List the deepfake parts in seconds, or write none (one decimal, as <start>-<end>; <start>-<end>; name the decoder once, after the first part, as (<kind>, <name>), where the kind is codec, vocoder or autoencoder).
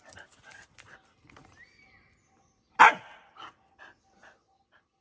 none